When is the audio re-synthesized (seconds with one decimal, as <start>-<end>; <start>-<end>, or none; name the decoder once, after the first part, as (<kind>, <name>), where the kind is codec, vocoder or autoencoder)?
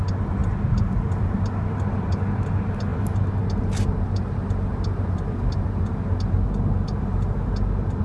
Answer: none